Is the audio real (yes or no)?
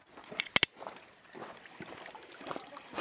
yes